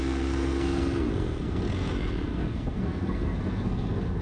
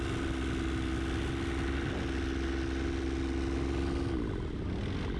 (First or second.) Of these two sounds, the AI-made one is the first